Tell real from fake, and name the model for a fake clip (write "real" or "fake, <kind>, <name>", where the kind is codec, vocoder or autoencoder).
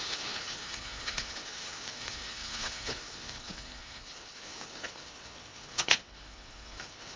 fake, codec, HILCodec